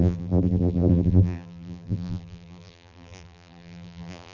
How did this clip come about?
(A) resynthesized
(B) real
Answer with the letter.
A